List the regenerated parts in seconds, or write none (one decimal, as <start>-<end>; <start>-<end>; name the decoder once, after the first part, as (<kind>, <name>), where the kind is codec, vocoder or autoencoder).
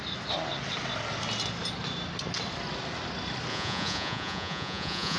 3.5-5.2 (vocoder, Vocos)